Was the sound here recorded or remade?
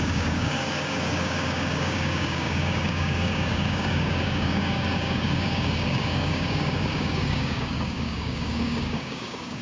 remade